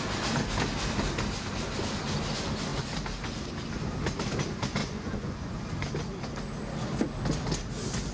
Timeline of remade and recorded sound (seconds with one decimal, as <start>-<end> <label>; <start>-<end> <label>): 0.0-4.8 recorded; 4.8-5.6 remade; 5.6-8.1 recorded